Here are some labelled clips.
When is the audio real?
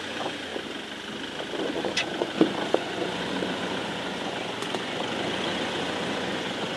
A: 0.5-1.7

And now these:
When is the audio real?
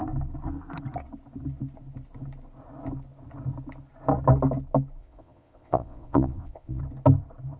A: 0.0-5.0; 6.8-7.6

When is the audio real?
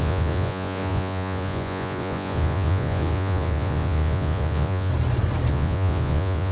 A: 4.9-5.5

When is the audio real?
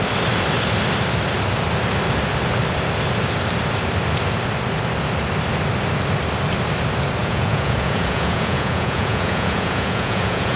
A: 0.0-7.2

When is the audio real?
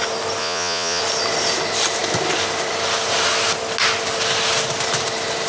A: 0.0-0.4; 1.0-5.5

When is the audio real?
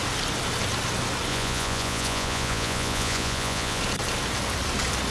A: 0.0-1.3; 3.8-5.1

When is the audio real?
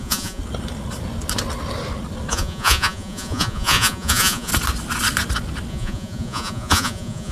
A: 0.4-2.3; 4.5-5.7